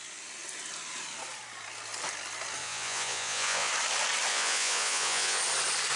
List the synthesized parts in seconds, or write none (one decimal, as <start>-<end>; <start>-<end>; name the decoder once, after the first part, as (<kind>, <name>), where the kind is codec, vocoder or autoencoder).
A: 2.6-3.7 (vocoder, Vocos); 4.3-5.4